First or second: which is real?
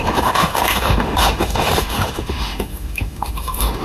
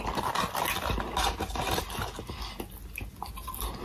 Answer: second